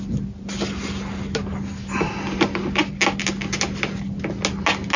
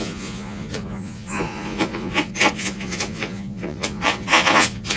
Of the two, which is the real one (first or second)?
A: first